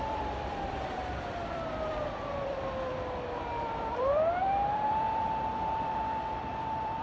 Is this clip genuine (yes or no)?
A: no